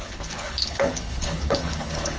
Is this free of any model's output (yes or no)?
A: no